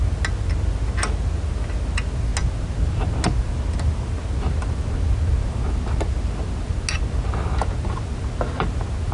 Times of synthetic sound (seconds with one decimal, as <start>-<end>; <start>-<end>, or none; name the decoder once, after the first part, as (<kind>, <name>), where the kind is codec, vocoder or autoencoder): none